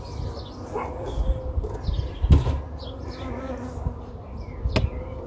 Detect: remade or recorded recorded